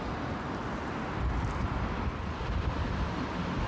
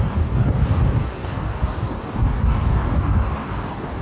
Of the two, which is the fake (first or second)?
second